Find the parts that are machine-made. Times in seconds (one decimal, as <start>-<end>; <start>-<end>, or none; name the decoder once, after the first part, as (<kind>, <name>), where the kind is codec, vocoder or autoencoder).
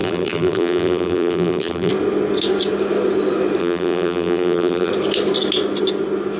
0.0-1.9 (vocoder, BigVGAN v2); 3.6-4.9